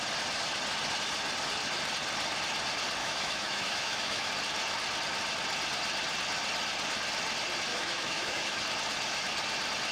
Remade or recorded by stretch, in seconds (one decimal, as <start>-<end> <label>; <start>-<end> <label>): 0.0-3.0 recorded; 3.0-4.3 remade; 4.3-7.7 recorded; 7.7-8.6 remade; 8.6-9.9 recorded